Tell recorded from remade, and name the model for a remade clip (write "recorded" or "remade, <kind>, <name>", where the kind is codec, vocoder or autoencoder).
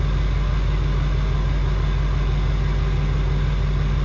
recorded